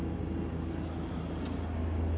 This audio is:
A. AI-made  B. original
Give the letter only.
B